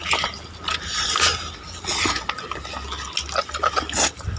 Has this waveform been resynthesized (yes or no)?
no